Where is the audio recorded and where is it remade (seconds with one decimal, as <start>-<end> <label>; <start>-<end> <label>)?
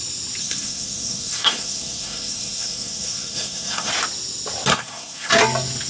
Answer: 0.0-0.4 recorded; 0.4-3.9 remade; 3.9-4.7 recorded; 4.7-5.3 remade; 5.3-5.9 recorded